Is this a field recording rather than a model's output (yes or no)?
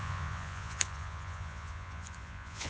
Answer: no